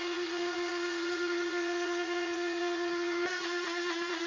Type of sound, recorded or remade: remade